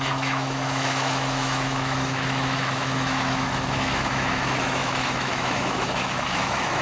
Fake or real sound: fake